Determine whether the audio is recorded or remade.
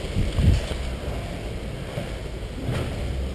recorded